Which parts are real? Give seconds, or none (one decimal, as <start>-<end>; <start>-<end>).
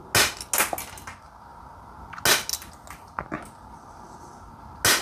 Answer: 0.0-5.0